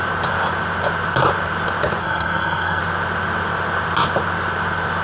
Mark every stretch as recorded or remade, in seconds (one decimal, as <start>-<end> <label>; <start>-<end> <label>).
0.0-2.0 recorded; 2.0-2.8 remade; 2.8-5.0 recorded